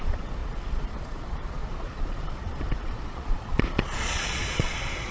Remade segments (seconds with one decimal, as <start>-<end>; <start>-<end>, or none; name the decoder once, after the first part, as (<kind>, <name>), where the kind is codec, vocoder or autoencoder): 0.0-5.1 (vocoder, Vocos)